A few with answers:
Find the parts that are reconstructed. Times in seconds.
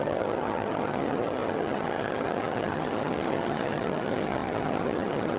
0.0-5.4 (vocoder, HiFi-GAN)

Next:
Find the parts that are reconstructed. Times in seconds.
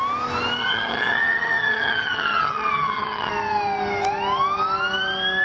0.6-3.3 (vocoder, HiFi-GAN)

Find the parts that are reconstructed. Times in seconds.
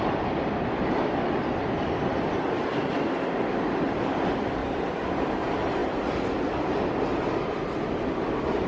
4.6-5.1 (vocoder, BigVGAN v2)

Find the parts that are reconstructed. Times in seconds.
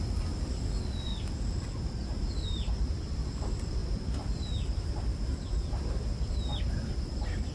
0.0-1.1 (vocoder, BigVGAN v2); 2.2-3.8; 7.0-7.5